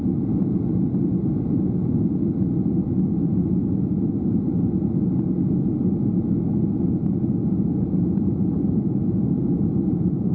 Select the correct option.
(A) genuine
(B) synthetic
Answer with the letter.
A